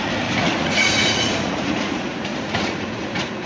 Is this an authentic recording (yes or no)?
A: no